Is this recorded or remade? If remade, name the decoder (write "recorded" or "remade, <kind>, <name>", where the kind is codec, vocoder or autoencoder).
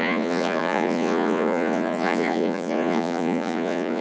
remade, vocoder, Vocos